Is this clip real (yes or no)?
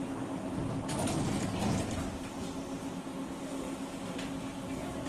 yes